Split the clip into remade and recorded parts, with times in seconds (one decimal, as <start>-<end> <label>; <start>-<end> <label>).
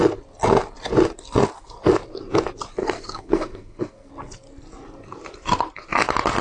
0.0-2.8 recorded; 2.8-4.1 remade; 4.1-6.4 recorded